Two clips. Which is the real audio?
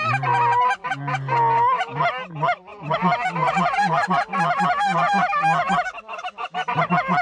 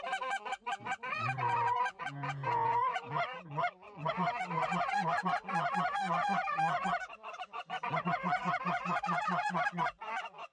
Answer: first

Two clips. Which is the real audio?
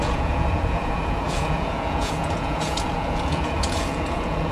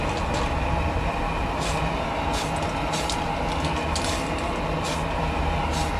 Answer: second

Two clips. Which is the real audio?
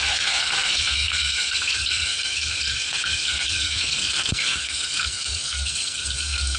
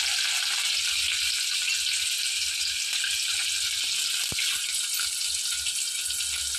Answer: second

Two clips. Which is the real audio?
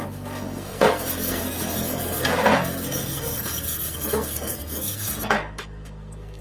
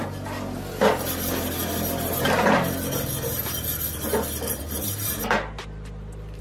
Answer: second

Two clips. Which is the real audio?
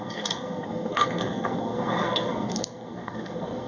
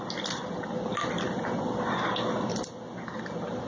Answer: second